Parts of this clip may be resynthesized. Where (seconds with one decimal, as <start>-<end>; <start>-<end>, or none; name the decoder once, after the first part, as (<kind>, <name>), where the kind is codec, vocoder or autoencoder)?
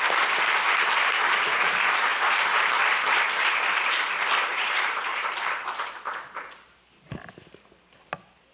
2.1-2.7 (vocoder, BigVGAN v2); 4.5-6.4